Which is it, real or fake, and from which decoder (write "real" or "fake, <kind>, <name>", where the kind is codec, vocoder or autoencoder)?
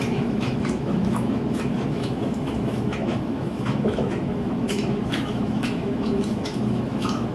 fake, autoencoder, DAC-VAE